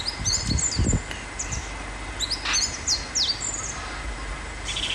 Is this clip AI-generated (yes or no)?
no